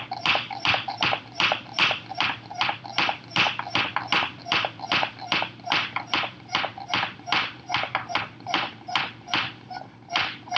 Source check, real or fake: fake